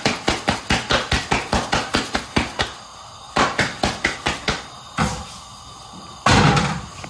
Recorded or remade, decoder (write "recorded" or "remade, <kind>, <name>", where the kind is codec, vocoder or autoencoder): recorded